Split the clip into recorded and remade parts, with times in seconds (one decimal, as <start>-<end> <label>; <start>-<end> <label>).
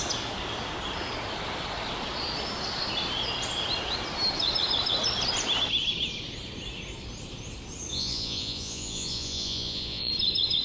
0.0-7.9 recorded; 7.9-10.1 remade; 10.1-10.6 recorded